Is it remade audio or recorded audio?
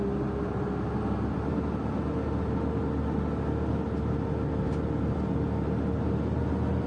recorded